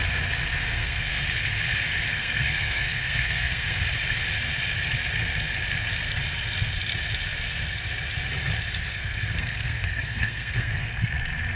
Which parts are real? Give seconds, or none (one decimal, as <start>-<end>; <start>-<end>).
0.0-0.7; 1.2-2.1; 3.8-8.9; 11.0-11.6